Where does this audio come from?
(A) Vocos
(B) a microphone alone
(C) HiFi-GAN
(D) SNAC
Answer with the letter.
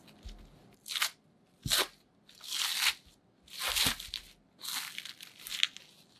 B